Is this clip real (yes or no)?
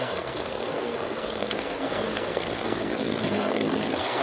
no